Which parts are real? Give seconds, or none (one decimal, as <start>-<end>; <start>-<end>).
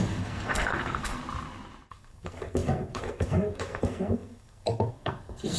1.2-1.9